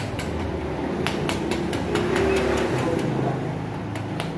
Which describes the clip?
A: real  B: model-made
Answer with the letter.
A